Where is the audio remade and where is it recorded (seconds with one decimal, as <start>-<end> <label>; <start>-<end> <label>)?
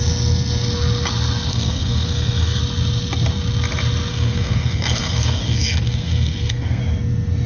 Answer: 0.0-1.5 recorded; 1.5-2.6 remade; 2.6-4.1 recorded; 4.1-6.8 remade; 6.8-7.5 recorded